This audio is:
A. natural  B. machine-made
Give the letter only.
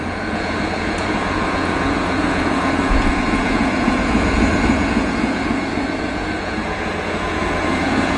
B